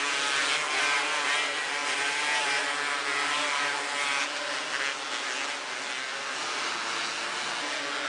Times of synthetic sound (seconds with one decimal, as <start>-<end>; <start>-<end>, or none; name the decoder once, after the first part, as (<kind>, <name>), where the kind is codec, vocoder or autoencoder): none